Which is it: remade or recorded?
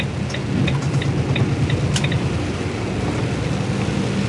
recorded